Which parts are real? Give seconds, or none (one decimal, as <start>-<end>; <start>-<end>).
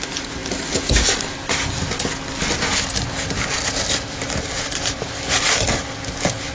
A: 0.0-6.5